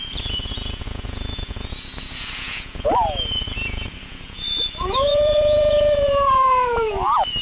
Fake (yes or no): yes